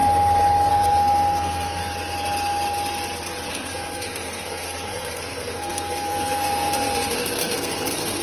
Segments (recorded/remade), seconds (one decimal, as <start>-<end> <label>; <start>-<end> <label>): 0.0-0.7 recorded; 0.7-1.8 remade; 1.8-3.5 recorded; 3.5-8.2 remade